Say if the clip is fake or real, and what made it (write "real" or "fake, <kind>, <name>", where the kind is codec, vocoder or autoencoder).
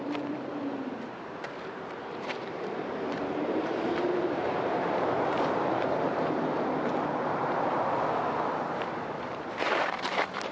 fake, vocoder, BigVGAN v2